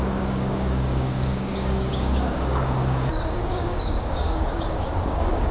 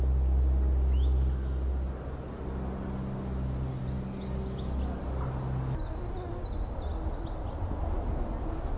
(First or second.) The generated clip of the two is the first